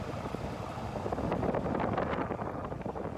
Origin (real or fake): real